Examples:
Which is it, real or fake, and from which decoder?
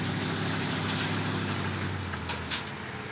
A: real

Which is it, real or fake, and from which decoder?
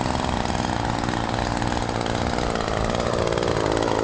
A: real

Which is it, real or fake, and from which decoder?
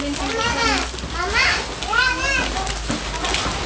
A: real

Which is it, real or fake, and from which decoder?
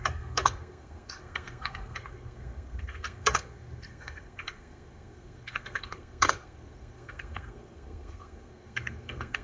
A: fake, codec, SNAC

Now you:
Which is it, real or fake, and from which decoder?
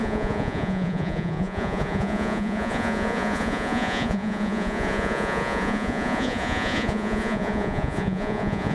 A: fake, vocoder, Vocos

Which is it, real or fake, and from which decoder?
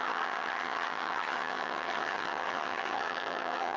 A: fake, vocoder, HiFi-GAN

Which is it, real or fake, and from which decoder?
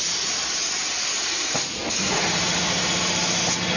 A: real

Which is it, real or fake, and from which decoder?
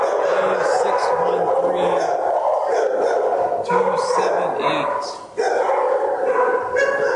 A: real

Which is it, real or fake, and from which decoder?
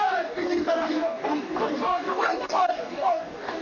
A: fake, codec, DAC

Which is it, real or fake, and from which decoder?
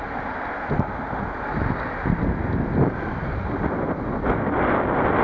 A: real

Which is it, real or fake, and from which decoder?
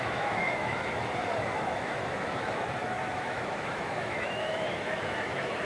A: fake, autoencoder, DAC-VAE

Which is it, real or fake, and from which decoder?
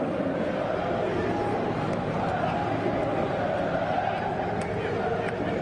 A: real